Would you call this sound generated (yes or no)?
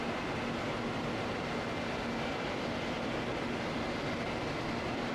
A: no